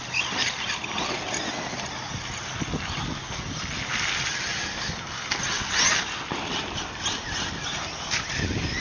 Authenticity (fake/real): real